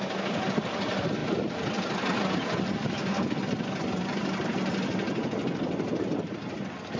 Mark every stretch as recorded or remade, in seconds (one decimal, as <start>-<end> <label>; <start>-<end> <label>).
0.0-7.0 recorded